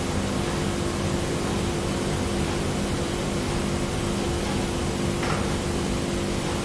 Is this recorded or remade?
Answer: recorded